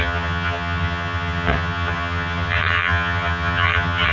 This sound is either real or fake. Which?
fake